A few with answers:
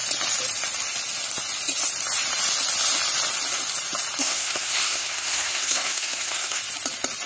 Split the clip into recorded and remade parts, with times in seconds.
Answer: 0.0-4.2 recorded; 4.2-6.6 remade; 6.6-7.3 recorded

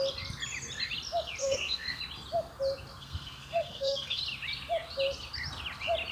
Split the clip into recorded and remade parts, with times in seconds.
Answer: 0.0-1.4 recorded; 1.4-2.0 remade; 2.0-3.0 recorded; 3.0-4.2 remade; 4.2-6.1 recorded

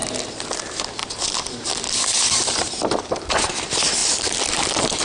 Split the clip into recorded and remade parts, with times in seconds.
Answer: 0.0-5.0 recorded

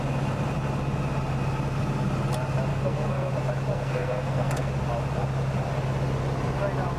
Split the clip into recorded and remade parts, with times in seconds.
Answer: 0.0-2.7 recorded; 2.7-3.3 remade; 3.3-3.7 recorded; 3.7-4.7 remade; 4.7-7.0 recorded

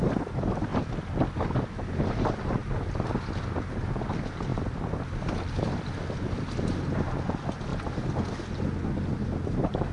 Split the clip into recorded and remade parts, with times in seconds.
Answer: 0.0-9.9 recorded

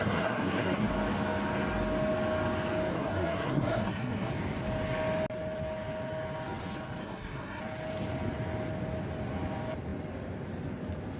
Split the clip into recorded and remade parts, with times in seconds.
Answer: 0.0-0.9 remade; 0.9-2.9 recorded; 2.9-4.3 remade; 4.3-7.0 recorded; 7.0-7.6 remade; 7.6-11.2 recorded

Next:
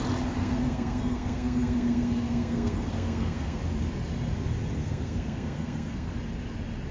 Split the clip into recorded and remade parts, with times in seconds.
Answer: 0.0-0.4 recorded; 0.4-3.6 remade; 3.6-4.8 recorded; 4.8-6.1 remade; 6.1-6.9 recorded